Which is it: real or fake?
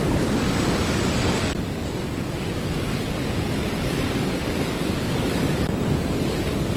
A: fake